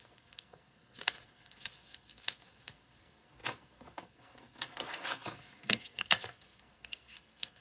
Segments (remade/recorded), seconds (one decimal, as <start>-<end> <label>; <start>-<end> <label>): 0.0-7.6 remade